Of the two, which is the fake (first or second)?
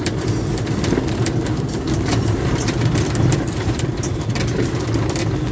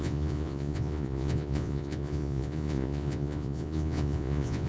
second